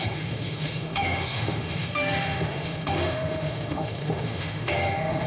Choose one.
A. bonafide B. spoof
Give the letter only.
B